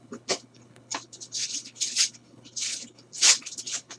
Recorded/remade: remade